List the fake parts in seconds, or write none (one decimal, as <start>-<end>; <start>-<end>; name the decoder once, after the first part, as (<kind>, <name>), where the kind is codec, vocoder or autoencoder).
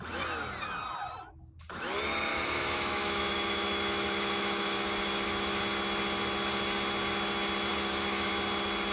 2.3-5.6 (autoencoder, DAC-VAE); 7.7-8.3